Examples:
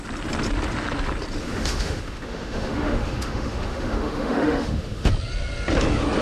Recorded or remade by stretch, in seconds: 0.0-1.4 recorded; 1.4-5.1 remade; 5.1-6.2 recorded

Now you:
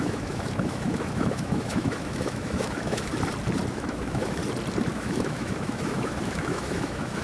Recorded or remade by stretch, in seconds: 0.0-3.1 remade; 3.1-3.7 recorded; 3.7-4.4 remade; 4.4-4.9 recorded; 4.9-7.2 remade